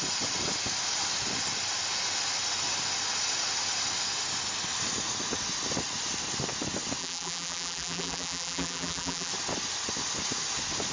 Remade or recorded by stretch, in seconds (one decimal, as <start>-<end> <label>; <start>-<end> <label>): 0.0-7.0 recorded; 7.0-9.3 remade; 9.3-10.9 recorded